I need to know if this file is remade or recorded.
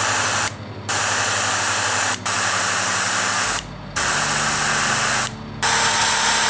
remade